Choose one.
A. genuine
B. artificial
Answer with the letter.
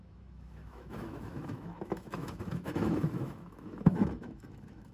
B